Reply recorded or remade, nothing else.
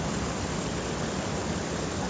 recorded